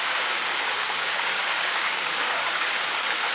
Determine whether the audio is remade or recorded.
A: remade